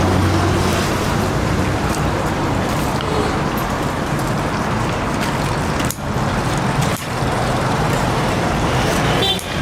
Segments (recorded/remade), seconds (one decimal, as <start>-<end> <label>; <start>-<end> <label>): 0.0-0.7 recorded; 0.7-4.2 remade; 4.2-6.9 recorded; 6.9-9.6 remade